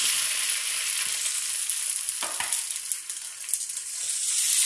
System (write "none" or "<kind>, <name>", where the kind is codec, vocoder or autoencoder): none